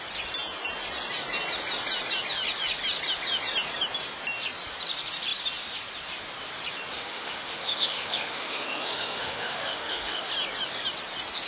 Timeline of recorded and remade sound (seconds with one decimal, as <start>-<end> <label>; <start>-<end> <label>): 0.0-6.9 recorded; 6.9-10.3 remade; 10.3-11.5 recorded